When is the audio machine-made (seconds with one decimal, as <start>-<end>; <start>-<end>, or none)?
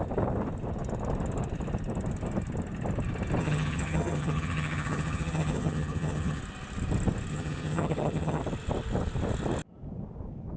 3.4-6.4; 7.3-8.4